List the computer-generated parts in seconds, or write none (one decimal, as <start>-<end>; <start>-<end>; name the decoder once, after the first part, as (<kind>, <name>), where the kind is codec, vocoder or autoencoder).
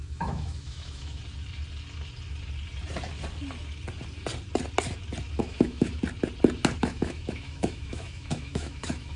0.0-1.2 (autoencoder, DAC-VAE); 5.4-5.9; 6.8-9.2